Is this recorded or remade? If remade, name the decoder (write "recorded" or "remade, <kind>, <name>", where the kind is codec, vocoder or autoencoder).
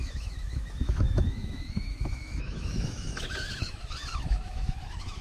remade, autoencoder, DAC-VAE